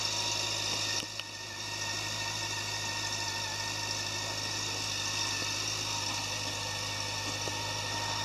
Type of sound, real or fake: real